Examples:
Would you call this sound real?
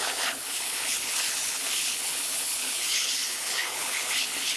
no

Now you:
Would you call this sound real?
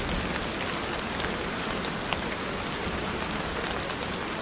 yes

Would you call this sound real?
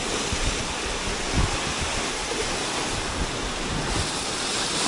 yes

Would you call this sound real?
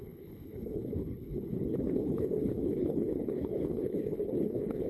no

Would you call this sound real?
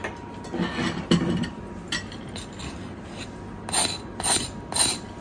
yes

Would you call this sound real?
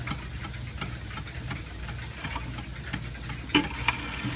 yes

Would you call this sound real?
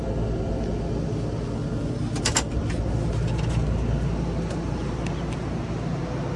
yes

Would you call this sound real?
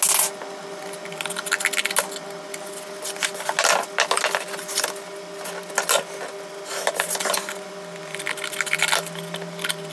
yes